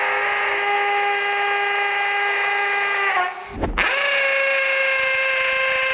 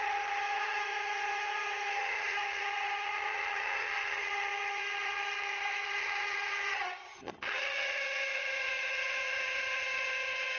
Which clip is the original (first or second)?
first